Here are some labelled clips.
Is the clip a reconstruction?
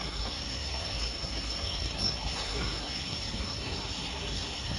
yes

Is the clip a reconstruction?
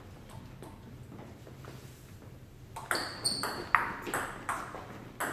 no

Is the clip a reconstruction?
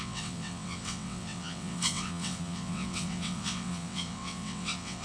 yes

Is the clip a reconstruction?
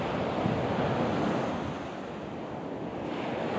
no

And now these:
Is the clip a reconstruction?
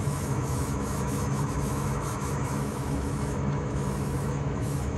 yes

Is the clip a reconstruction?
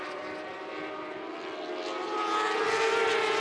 no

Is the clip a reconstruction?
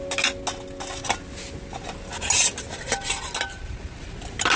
no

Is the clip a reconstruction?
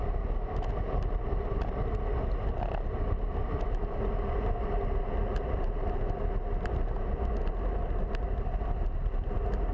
no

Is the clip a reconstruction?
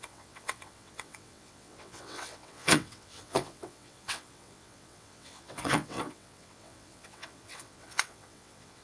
yes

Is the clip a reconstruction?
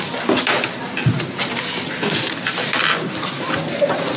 no